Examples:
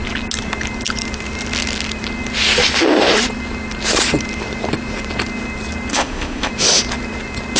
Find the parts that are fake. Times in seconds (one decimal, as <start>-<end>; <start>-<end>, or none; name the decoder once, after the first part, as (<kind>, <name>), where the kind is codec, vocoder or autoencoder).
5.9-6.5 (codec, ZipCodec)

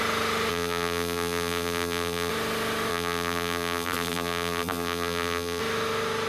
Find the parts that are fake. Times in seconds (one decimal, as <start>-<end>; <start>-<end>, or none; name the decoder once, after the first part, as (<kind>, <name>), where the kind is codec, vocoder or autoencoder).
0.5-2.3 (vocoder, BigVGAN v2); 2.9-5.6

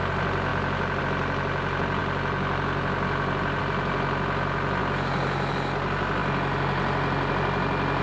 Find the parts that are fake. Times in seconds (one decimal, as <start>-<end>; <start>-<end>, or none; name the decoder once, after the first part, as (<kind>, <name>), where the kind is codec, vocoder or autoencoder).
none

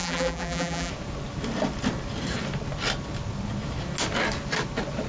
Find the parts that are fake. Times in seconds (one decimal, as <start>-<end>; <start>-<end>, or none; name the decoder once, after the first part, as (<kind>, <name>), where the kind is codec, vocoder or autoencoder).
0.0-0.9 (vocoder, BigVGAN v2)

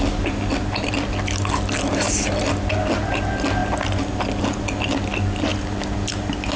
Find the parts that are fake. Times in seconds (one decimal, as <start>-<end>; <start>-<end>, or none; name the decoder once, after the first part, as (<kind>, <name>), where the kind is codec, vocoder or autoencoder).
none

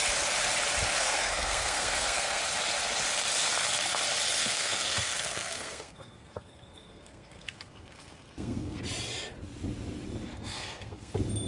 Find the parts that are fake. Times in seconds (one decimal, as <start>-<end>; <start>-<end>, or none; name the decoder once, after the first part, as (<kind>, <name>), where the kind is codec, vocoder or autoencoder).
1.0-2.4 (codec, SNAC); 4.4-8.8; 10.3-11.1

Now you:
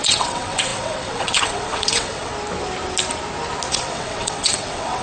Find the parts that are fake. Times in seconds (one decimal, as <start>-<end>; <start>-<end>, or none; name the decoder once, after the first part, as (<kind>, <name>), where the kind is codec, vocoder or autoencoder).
0.0-2.3 (vocoder, WaveNeXt); 3.7-5.0